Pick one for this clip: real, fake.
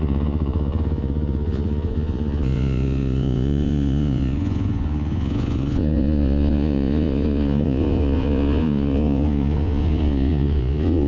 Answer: fake